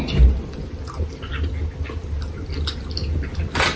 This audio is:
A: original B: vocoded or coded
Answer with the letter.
A